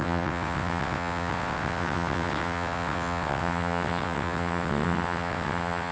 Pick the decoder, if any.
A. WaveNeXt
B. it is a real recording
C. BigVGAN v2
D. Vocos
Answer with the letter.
A